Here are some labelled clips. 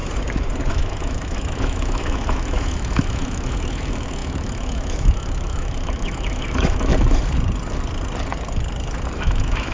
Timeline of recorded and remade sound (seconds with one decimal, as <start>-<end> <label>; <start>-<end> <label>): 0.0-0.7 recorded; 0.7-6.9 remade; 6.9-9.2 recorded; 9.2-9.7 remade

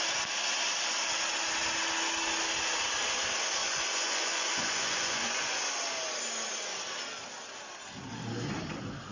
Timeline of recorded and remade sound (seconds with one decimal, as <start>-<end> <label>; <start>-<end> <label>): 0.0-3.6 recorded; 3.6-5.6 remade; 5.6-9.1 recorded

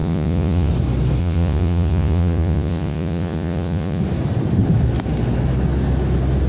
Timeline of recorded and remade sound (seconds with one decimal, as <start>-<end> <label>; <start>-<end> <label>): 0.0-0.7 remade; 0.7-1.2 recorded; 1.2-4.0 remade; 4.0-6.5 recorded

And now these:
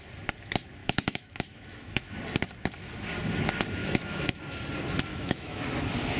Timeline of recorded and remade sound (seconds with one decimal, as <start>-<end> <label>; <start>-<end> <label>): 0.0-0.8 recorded; 0.8-2.1 remade; 2.1-3.8 recorded; 3.8-4.4 remade; 4.4-5.1 recorded; 5.1-5.7 remade; 5.7-6.2 recorded